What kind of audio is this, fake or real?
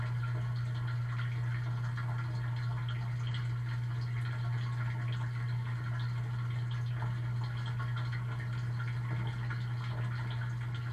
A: real